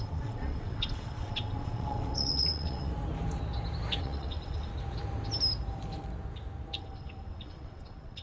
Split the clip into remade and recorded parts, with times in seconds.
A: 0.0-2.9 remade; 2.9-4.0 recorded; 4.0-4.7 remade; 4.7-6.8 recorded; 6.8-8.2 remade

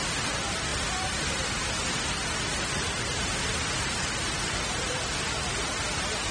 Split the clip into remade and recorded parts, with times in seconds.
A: 0.0-6.3 recorded

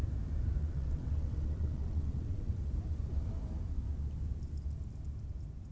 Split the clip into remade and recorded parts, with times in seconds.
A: 0.0-0.6 recorded; 0.6-2.7 remade; 2.7-5.7 recorded